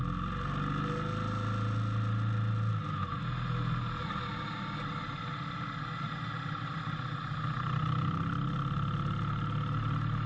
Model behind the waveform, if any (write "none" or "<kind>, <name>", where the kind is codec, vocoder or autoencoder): none